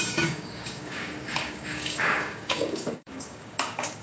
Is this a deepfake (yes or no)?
yes